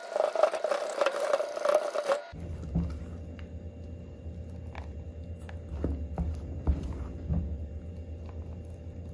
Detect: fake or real real